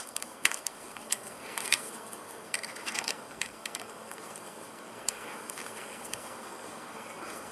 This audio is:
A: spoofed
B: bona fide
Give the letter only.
A